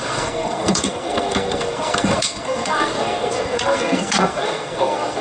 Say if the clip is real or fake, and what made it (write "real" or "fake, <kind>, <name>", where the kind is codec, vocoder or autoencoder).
fake, codec, SNAC